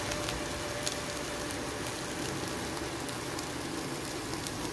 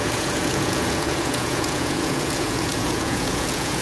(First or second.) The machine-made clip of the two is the second